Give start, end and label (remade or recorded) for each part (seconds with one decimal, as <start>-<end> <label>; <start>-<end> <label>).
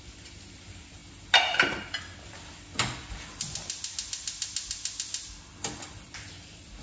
0.0-6.8 recorded